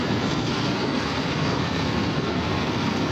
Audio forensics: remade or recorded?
remade